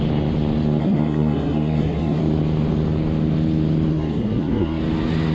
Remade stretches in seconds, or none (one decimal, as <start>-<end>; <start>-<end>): 0.8-2.2; 3.9-4.8